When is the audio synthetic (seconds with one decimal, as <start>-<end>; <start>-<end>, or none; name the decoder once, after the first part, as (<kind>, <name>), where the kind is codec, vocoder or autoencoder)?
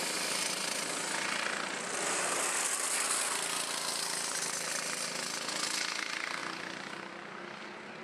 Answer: none